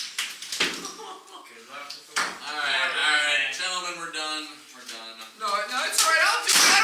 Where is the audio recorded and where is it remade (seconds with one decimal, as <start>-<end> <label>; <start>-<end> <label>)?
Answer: 0.0-1.8 recorded; 1.8-2.4 remade; 2.4-6.8 recorded